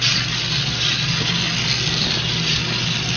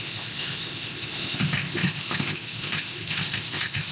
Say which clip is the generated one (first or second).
second